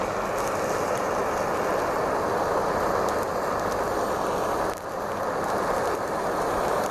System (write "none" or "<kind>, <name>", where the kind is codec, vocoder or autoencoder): none